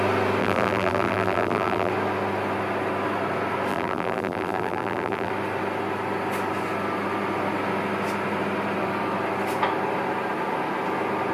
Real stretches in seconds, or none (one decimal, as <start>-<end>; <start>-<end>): 0.0-0.4; 1.9-3.7; 5.3-11.3